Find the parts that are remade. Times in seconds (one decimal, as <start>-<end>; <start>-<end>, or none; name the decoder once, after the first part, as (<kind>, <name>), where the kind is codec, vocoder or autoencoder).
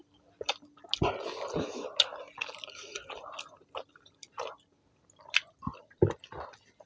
none